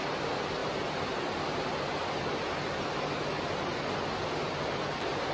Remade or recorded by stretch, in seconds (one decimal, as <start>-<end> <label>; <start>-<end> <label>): 0.0-5.3 recorded